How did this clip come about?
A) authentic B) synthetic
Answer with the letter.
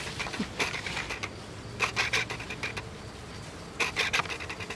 A